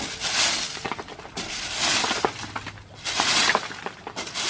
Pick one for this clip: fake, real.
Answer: fake